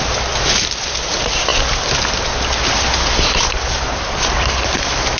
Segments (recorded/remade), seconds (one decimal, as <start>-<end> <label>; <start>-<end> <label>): 0.0-5.2 recorded